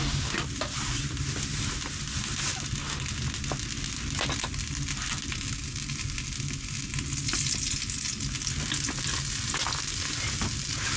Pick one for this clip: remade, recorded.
recorded